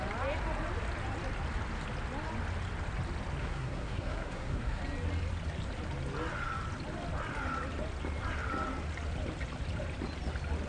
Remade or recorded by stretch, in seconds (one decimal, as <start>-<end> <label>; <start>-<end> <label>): 0.0-3.4 recorded; 3.4-4.8 remade; 4.8-10.7 recorded